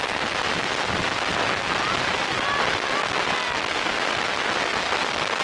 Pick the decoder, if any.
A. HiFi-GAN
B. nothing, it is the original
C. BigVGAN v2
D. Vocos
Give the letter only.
B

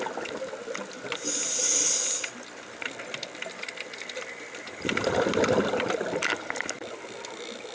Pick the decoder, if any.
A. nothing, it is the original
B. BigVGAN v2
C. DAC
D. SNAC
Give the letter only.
A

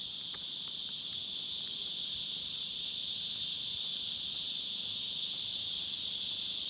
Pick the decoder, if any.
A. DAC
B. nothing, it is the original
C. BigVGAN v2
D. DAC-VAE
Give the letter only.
C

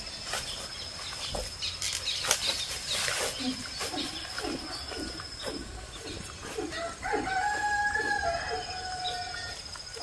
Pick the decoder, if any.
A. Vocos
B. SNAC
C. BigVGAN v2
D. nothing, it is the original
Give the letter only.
D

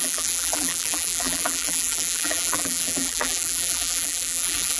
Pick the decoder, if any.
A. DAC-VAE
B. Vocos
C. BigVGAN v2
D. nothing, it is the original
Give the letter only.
C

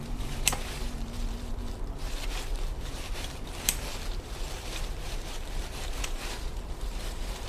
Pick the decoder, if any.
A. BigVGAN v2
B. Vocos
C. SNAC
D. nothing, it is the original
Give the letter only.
A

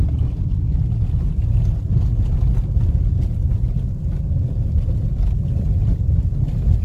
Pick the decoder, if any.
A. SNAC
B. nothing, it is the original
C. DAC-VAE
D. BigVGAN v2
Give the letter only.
B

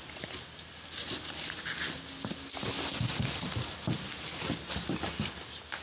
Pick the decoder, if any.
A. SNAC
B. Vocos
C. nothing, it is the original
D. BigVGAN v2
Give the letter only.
C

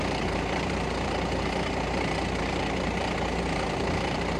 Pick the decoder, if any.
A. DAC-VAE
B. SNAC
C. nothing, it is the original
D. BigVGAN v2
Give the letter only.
D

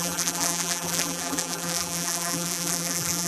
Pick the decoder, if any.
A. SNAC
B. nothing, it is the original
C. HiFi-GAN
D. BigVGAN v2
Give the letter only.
D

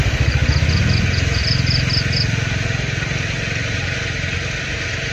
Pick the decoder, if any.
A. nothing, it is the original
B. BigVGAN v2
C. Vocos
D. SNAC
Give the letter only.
A